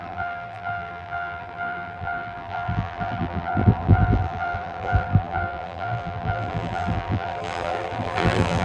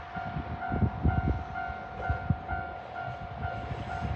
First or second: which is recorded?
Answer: second